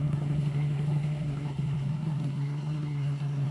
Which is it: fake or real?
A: fake